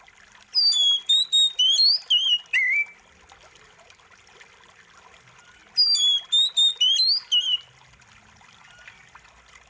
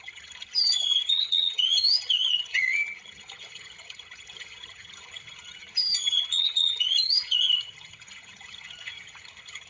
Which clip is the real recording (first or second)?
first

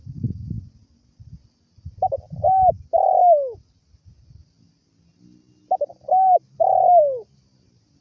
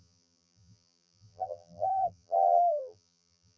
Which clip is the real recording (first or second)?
first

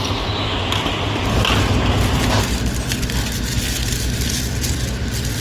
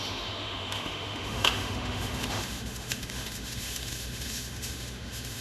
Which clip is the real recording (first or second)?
first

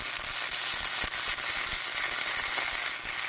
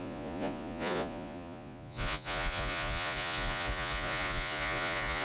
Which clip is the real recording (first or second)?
first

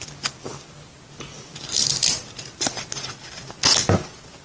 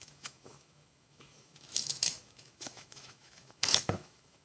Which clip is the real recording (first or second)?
first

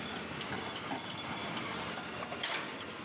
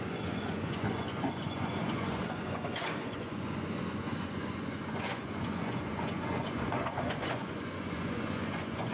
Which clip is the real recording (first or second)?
first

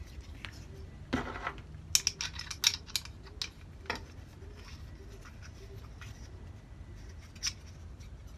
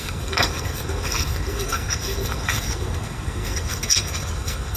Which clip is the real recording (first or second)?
first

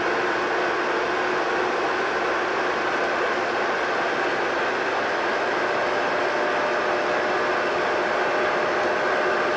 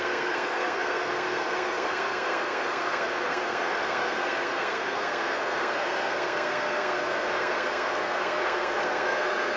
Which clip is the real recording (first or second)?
first